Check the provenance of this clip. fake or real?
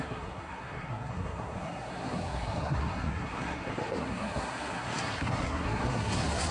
fake